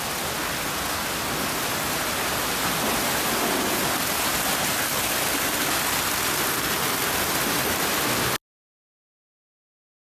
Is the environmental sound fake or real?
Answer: real